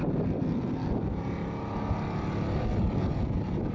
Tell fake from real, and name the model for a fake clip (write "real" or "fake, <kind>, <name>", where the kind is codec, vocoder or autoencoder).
real